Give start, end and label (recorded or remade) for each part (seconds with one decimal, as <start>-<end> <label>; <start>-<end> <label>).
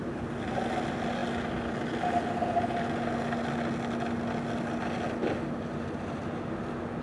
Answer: 0.0-7.0 recorded